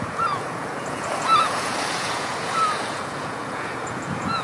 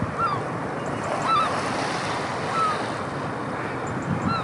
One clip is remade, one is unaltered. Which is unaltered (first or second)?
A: second